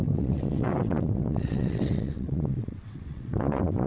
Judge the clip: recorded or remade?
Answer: remade